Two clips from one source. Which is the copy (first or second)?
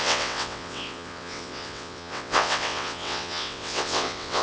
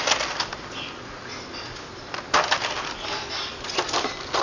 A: first